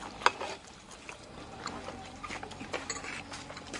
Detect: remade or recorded recorded